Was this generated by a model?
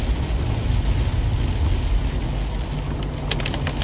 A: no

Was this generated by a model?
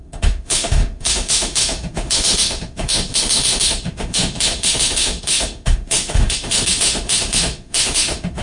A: yes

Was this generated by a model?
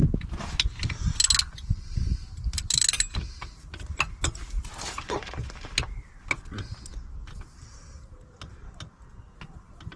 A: no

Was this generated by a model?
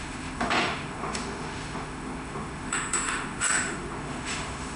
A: yes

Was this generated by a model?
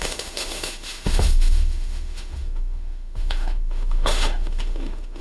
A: yes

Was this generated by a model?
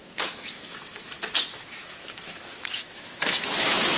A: yes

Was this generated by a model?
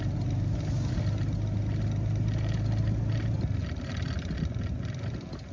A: no